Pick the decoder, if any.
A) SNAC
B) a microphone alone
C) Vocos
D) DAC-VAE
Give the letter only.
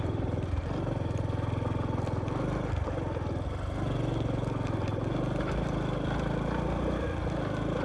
B